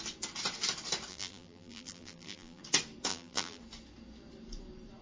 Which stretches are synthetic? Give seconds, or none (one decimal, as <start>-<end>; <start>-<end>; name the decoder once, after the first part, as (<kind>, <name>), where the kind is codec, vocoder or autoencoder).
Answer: 1.1-2.6 (vocoder, BigVGAN v2); 3.1-3.6